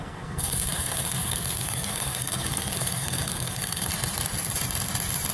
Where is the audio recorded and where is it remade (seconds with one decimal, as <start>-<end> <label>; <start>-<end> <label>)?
0.0-3.9 remade; 3.9-5.3 recorded